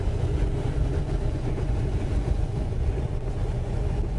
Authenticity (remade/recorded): remade